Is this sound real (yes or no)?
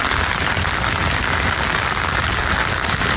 yes